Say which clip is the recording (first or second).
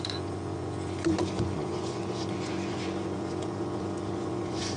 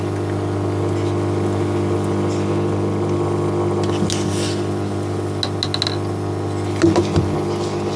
second